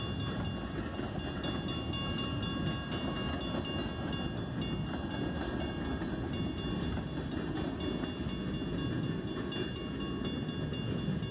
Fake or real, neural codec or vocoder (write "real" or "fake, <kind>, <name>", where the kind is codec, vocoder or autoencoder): real